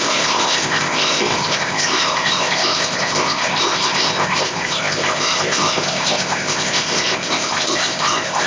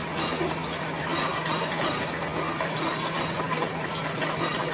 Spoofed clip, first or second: first